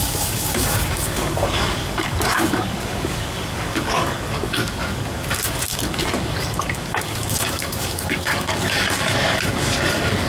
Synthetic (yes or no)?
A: yes